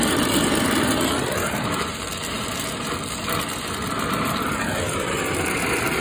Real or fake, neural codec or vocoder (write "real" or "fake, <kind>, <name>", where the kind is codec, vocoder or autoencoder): real